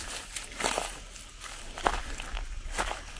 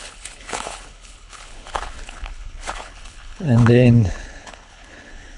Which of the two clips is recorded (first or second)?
first